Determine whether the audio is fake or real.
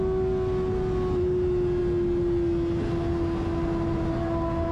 real